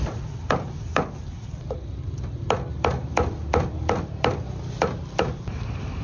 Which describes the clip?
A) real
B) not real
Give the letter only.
B